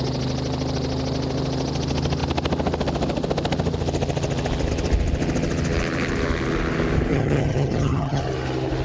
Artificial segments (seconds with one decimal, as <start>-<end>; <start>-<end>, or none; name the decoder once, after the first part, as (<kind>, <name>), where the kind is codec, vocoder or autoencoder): 7.1-8.2 (vocoder, HiFi-GAN)